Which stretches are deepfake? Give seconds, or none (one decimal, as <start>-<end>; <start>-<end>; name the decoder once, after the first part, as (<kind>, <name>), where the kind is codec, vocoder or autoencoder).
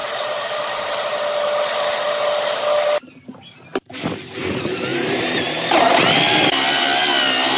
4.9-6.0 (vocoder, BigVGAN v2)